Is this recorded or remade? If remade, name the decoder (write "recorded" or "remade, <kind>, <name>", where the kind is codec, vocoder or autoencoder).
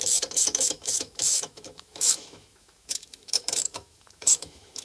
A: remade, autoencoder, DAC-VAE